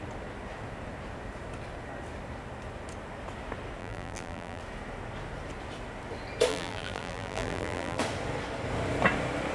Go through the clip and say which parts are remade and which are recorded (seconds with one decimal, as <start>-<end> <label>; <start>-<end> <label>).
0.0-3.8 recorded; 3.8-4.6 remade; 4.6-6.5 recorded; 6.5-8.0 remade; 8.0-9.5 recorded